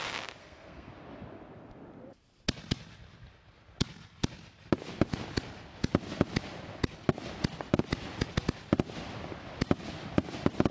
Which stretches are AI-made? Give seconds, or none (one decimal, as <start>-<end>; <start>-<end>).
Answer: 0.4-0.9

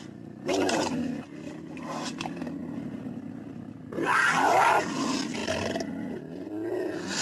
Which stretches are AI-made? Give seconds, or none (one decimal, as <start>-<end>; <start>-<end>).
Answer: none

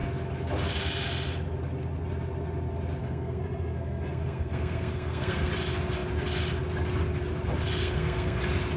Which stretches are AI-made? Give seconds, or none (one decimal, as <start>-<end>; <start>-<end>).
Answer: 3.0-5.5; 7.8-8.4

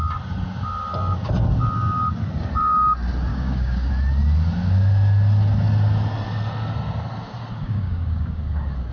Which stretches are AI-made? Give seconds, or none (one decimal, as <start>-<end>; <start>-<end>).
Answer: 3.3-3.9; 7.6-8.4

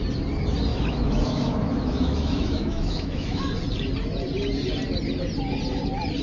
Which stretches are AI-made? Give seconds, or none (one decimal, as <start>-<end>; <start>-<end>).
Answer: 0.7-3.4